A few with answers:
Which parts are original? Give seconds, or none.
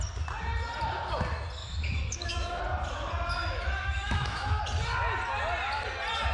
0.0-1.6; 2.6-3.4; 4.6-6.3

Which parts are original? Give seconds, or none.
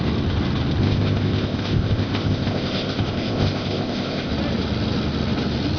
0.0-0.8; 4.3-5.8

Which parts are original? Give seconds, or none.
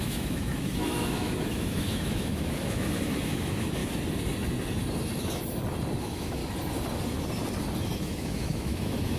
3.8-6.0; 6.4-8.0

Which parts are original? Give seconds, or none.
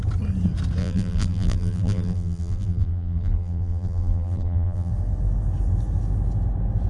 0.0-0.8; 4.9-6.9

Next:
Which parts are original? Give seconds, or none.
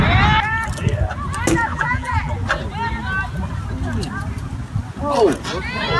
0.0-1.7; 2.3-6.0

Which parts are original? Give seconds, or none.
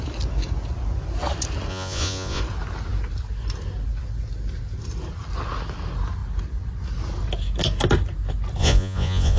0.0-1.7; 2.4-8.6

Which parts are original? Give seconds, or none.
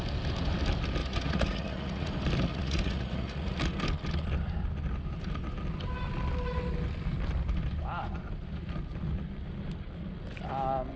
0.0-1.0; 2.1-2.5; 3.6-11.0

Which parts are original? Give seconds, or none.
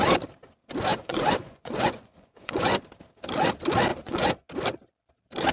0.0-0.9; 2.8-3.9; 4.5-5.5